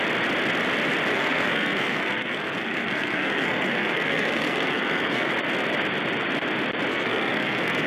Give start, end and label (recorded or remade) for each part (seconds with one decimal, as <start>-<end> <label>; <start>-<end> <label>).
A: 0.0-1.1 recorded; 1.1-5.3 remade; 5.3-6.9 recorded; 6.9-7.9 remade